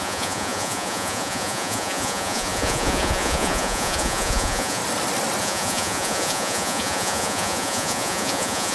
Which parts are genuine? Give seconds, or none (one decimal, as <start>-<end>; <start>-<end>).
4.8-5.4